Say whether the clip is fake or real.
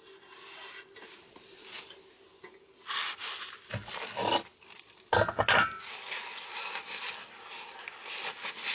real